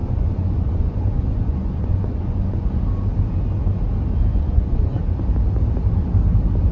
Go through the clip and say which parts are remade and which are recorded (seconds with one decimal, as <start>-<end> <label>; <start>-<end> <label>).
0.0-2.8 remade; 2.8-4.3 recorded; 4.3-5.2 remade; 5.2-6.7 recorded